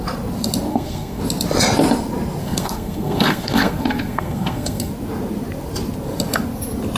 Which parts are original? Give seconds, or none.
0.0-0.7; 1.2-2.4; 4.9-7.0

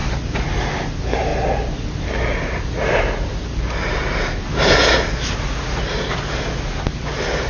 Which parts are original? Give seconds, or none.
0.0-7.5